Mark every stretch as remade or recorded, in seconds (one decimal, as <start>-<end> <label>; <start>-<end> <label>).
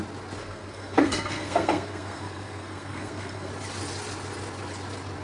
0.0-0.4 recorded; 0.4-3.5 remade; 3.5-5.2 recorded